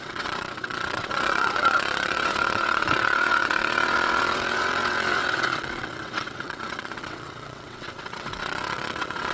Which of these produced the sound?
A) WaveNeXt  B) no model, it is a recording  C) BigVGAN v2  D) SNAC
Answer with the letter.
A